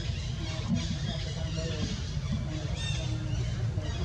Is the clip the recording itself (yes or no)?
yes